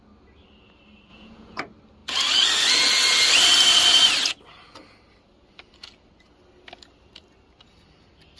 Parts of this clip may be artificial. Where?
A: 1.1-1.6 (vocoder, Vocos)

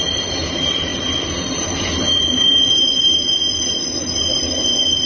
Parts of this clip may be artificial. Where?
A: none

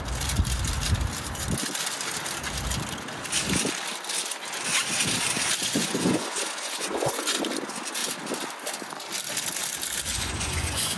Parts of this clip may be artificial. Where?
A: 5.6-7.4 (vocoder, Vocos); 10.1-11.0

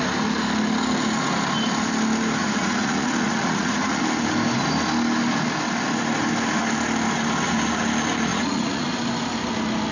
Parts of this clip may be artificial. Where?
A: 2.4-4.0 (vocoder, Vocos); 8.3-8.9

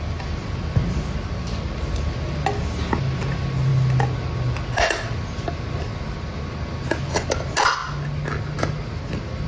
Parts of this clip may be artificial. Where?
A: none

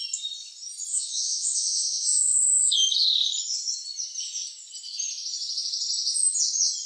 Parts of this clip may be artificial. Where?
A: 0.9-2.7 (vocoder, Vocos)

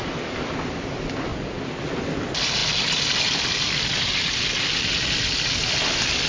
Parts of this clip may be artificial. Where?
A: none